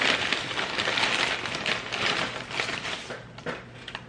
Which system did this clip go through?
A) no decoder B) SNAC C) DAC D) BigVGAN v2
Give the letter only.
A